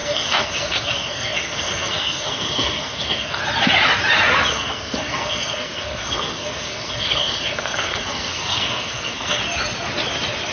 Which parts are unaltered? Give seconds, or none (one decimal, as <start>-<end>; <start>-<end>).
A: 3.4-4.5; 9.4-10.5